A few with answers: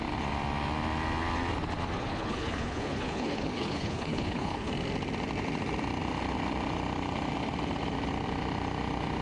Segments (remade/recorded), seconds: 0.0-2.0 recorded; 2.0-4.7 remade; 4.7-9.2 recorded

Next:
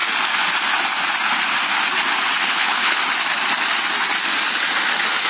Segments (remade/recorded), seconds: 0.0-2.4 recorded; 2.4-3.0 remade; 3.0-5.3 recorded

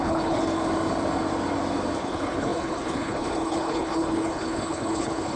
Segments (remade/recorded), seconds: 0.0-0.4 remade; 0.4-2.0 recorded; 2.0-5.4 remade

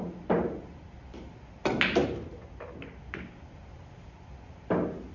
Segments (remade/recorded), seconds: 0.0-5.1 recorded